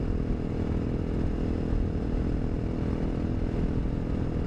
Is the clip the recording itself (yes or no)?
yes